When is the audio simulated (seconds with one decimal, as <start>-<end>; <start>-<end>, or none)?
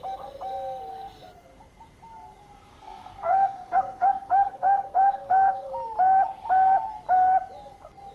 2.7-5.7